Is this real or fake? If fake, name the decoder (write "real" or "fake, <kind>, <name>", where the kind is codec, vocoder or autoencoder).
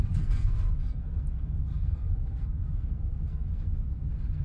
fake, codec, SNAC